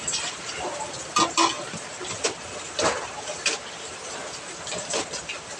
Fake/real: real